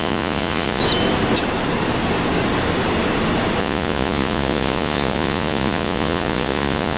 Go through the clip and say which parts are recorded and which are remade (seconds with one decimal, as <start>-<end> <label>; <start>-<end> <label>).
0.0-0.8 remade; 0.8-3.6 recorded; 3.6-7.0 remade